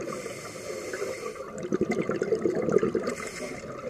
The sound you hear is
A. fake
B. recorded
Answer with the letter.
B